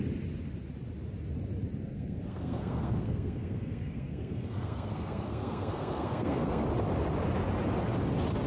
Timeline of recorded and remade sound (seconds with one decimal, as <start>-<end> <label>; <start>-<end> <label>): 0.0-1.8 recorded; 1.8-6.6 remade; 6.6-8.5 recorded